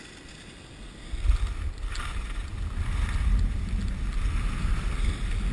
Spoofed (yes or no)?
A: no